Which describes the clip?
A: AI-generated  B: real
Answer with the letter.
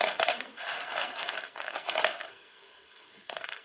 A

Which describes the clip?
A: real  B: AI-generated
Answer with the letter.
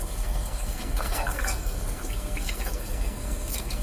B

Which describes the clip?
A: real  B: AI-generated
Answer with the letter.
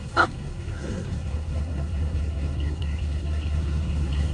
B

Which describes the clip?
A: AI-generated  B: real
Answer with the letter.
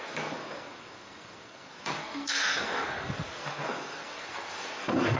A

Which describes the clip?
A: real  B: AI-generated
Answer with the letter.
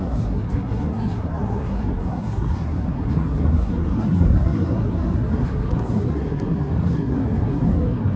B